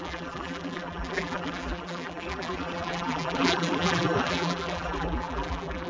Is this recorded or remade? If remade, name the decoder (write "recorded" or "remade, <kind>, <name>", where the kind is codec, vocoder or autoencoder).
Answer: remade, vocoder, BigVGAN v2